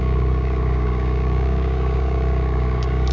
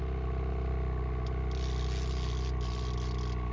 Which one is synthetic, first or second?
first